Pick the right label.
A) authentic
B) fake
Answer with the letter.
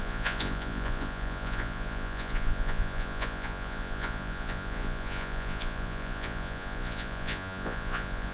B